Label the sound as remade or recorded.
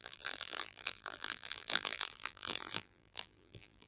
remade